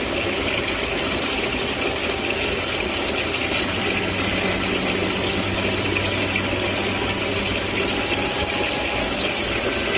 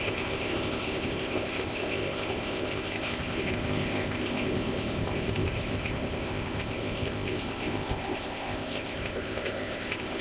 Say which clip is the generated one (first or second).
second